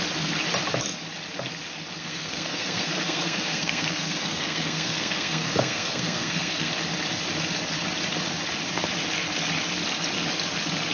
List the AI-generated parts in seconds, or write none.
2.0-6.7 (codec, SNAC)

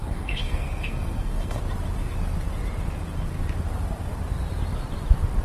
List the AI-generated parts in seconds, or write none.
0.0-1.6 (codec, SNAC)

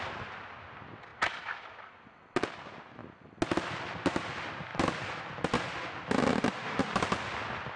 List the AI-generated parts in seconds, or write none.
none

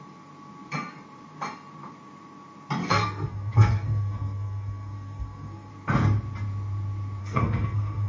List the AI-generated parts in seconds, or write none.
2.8-5.7 (codec, SNAC); 7.2-8.1

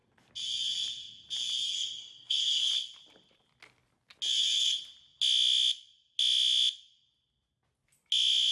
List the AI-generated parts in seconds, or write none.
1.7-2.7 (codec, SNAC)

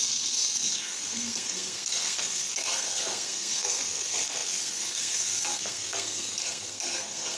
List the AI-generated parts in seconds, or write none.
0.0-7.4 (codec, SNAC)